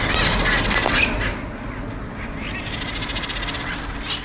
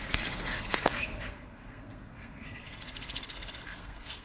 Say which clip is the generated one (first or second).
second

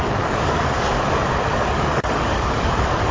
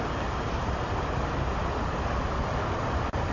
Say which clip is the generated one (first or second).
first